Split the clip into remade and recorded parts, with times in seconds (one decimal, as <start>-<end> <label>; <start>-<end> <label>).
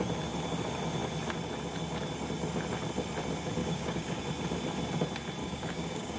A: 0.0-3.6 recorded; 3.6-4.2 remade; 4.2-5.4 recorded; 5.4-6.2 remade